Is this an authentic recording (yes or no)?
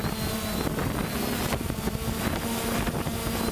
yes